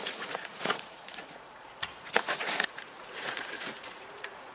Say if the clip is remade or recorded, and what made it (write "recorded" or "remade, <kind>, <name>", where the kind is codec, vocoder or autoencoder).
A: remade, vocoder, Vocos